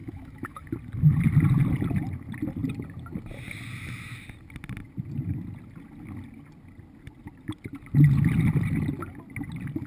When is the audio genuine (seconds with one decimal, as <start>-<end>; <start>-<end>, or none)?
0.6-9.9